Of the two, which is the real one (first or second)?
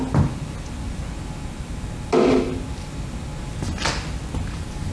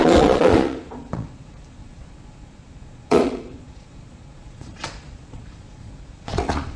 first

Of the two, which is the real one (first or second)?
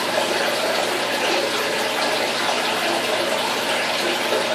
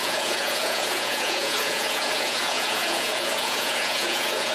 first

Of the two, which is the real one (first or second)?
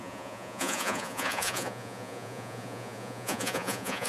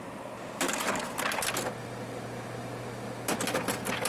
second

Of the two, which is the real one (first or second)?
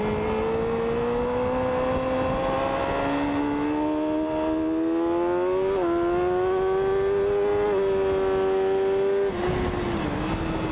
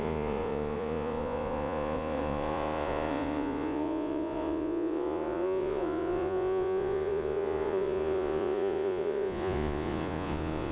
first